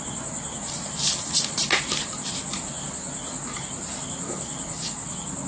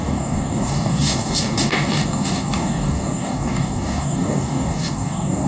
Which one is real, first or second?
first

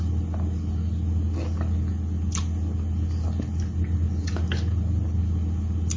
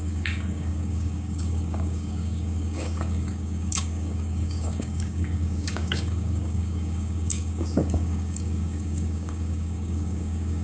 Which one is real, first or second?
first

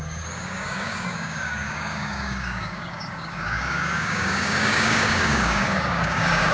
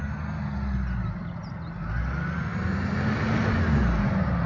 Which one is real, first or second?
second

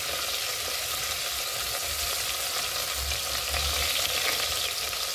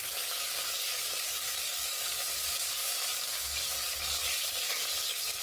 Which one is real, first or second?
first